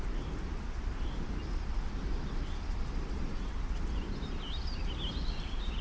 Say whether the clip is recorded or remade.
recorded